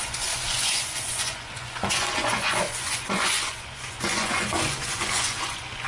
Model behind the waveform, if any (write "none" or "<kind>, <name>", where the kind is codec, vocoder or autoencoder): vocoder, Vocos